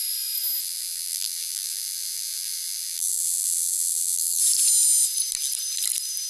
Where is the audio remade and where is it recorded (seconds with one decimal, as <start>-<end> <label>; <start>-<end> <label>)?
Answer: 0.0-0.6 recorded; 0.6-4.4 remade; 4.4-6.3 recorded